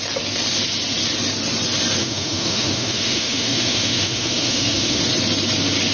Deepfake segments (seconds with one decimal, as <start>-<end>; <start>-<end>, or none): 2.0-5.0